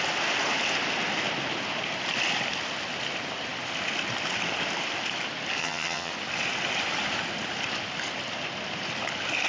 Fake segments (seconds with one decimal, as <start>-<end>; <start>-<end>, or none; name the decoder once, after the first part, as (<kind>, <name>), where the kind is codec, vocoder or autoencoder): 5.6-6.1 (vocoder, HiFi-GAN)